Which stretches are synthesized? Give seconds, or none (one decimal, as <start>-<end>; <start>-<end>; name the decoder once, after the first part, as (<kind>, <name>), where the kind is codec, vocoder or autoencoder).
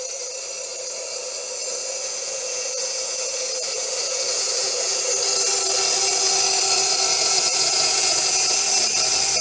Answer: 1.8-5.0 (vocoder, Vocos); 7.1-8.6